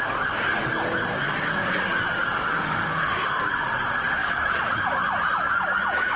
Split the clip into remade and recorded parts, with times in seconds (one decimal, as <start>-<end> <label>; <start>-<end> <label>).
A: 0.0-2.4 recorded; 2.4-3.4 remade; 3.4-6.2 recorded